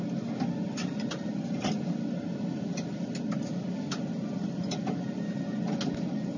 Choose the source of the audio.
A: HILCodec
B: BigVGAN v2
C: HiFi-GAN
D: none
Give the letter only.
D